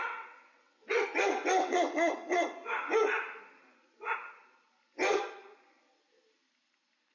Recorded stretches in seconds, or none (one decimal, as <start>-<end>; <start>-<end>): 2.6-7.1